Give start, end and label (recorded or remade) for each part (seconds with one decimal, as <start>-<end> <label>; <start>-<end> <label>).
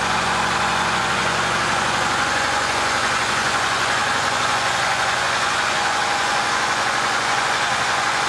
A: 0.0-8.3 remade